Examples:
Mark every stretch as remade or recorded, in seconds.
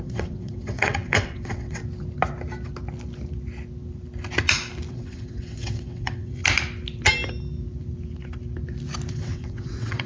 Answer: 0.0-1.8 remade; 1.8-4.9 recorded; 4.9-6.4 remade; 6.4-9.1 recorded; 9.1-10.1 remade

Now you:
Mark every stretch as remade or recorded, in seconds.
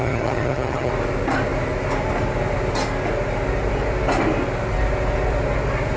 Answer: 0.0-0.9 remade; 0.9-6.0 recorded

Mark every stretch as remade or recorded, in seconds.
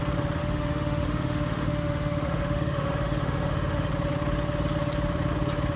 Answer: 0.0-0.4 recorded; 0.4-3.9 remade; 3.9-5.8 recorded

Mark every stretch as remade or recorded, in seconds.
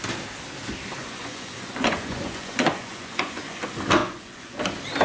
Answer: 0.0-1.0 recorded; 1.0-3.6 remade; 3.6-4.0 recorded; 4.0-4.6 remade; 4.6-5.0 recorded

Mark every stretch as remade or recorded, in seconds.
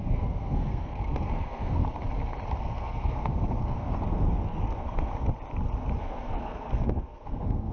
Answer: 0.0-1.8 remade; 1.8-2.6 recorded; 2.6-5.1 remade; 5.1-6.0 recorded; 6.0-7.7 remade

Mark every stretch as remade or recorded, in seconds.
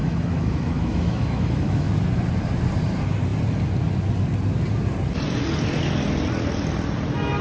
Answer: 0.0-1.9 remade; 1.9-7.4 recorded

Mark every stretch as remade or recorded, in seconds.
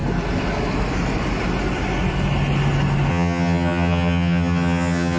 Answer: 0.0-3.1 recorded; 3.1-5.2 remade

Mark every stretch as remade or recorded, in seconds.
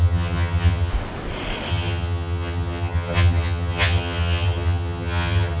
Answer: 0.0-0.9 remade; 0.9-1.7 recorded; 1.7-5.6 remade